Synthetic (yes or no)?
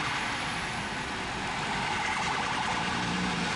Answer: no